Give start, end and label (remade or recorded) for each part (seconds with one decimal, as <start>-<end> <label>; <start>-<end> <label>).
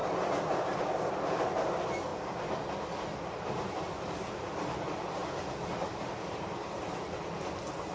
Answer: 0.0-7.9 recorded